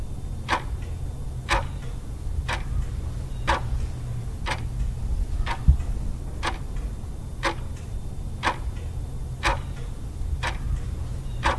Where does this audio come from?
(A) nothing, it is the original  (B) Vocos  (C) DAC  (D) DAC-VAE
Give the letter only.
A